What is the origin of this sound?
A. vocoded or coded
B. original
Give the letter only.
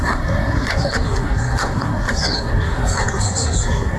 A